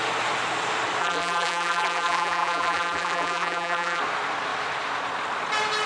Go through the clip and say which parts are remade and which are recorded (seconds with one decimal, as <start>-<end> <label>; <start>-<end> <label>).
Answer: 0.0-1.0 recorded; 1.0-4.0 remade; 4.0-5.9 recorded

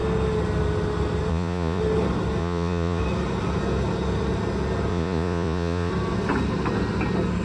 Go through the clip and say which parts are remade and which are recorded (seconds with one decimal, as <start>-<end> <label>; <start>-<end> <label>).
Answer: 0.0-1.3 recorded; 1.3-1.8 remade; 1.8-2.4 recorded; 2.4-3.0 remade; 3.0-4.9 recorded; 4.9-5.9 remade; 5.9-7.4 recorded